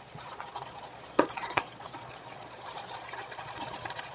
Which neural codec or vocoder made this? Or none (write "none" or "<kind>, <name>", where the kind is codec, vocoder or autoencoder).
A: vocoder, Vocos